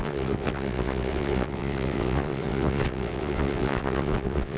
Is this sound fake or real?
fake